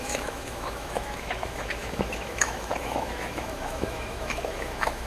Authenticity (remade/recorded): remade